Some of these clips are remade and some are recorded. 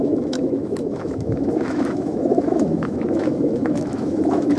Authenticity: remade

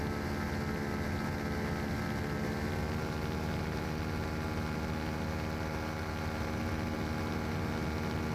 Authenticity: recorded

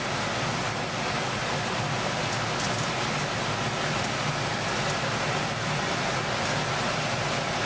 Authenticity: recorded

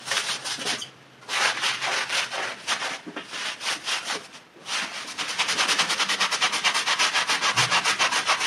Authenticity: recorded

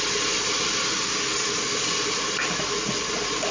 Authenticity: recorded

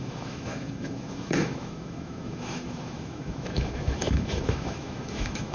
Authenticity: remade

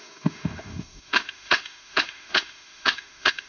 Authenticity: remade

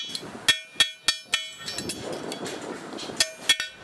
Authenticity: recorded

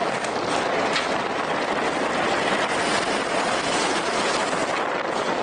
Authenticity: recorded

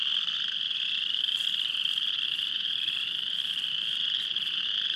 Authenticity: recorded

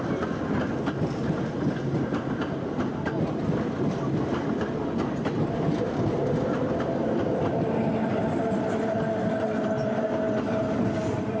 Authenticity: recorded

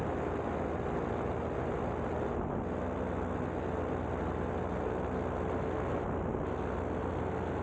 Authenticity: recorded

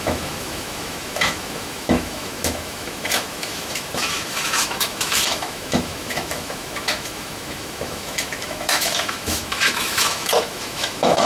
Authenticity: remade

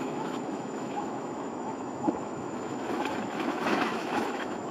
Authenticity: remade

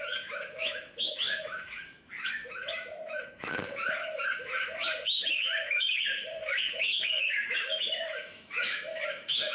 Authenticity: remade